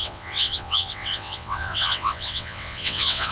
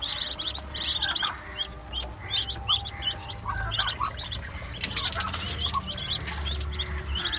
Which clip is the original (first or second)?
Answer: second